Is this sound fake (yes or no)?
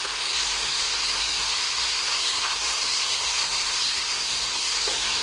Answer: yes